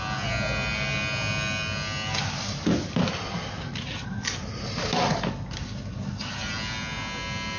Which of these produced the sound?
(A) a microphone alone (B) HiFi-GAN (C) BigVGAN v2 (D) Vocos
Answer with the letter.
A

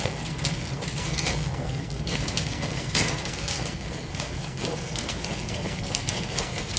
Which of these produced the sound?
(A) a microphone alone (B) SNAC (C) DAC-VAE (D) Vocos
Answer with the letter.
B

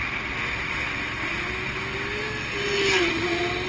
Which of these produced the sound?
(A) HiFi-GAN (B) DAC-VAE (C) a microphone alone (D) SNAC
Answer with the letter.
C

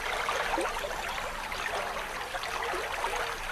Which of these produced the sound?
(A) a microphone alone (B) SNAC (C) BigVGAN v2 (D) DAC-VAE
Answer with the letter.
A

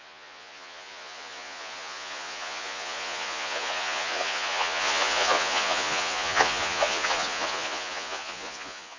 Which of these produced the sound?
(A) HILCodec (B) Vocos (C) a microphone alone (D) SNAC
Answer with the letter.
B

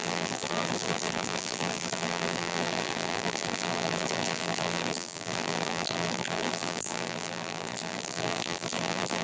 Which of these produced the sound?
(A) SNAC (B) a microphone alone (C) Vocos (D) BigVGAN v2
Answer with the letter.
D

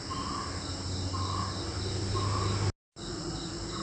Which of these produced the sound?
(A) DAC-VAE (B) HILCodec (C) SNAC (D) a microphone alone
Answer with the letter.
D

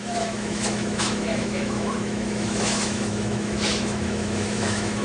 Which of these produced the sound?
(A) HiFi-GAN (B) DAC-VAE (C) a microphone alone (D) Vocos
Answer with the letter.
B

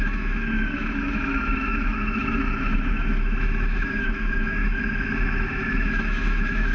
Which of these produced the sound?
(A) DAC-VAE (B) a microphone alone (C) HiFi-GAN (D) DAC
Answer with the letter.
A